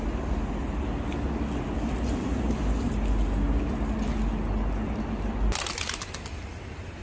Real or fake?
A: real